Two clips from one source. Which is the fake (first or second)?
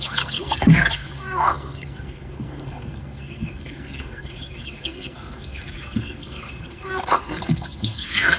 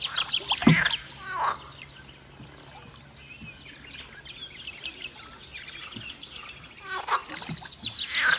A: first